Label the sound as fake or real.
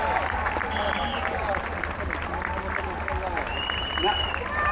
real